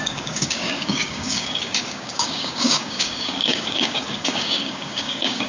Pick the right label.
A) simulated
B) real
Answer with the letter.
A